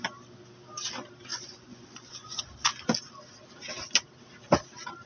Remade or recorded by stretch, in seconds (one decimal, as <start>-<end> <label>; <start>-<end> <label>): 0.0-1.3 recorded; 1.3-2.4 remade; 2.4-5.1 recorded